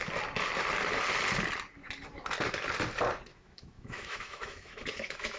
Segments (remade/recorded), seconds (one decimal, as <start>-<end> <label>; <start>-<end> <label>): 0.0-3.3 recorded; 3.3-5.4 remade